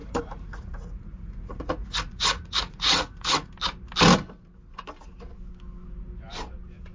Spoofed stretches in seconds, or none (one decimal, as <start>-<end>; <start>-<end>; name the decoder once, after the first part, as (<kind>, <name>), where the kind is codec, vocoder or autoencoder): 0.0-3.5 (vocoder, Vocos)